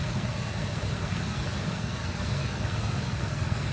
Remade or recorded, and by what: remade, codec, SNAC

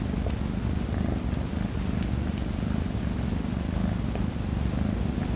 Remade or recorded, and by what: recorded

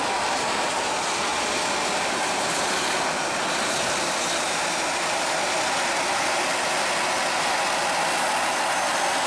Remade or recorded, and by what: recorded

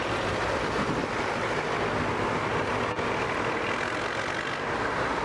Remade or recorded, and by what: recorded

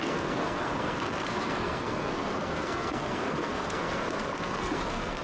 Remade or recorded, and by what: remade, codec, SNAC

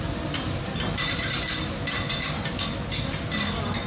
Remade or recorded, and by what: recorded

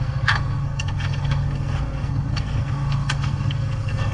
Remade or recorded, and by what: remade, codec, SNAC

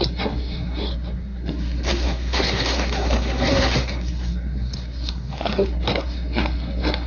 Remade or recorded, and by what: remade, codec, SNAC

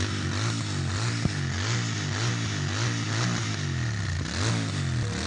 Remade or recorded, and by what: recorded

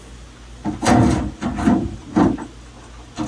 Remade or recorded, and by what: recorded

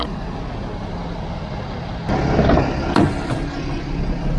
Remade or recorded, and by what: recorded